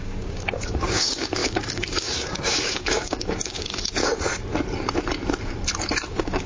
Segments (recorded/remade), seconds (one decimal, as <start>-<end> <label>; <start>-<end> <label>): 0.0-4.1 remade; 4.1-6.1 recorded; 6.1-6.5 remade